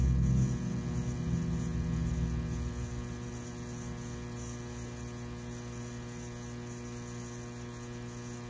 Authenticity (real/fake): real